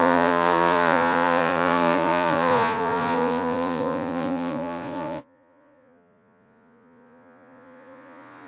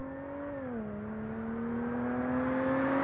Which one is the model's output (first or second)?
first